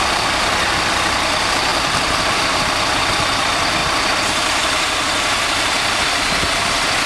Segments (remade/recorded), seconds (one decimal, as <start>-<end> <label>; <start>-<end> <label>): 0.0-1.7 remade; 1.7-2.2 recorded; 2.2-7.1 remade